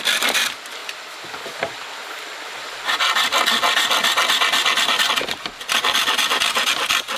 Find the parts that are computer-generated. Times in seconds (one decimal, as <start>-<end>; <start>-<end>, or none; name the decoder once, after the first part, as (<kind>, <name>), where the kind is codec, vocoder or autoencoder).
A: 6.0-6.7 (vocoder, BigVGAN v2)